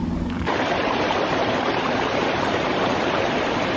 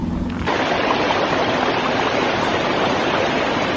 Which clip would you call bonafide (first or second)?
second